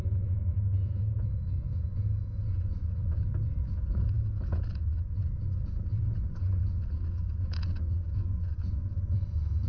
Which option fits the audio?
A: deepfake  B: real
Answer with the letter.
A